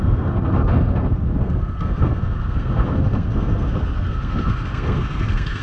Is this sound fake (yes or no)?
yes